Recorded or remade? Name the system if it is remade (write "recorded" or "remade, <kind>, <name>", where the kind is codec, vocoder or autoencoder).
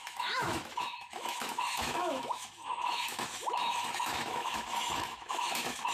remade, autoencoder, DAC-VAE